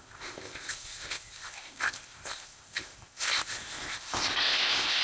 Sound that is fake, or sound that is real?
fake